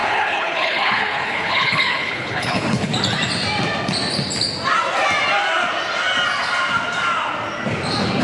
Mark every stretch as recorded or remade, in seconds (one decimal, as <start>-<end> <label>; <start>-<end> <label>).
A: 0.0-2.9 remade; 2.9-8.2 recorded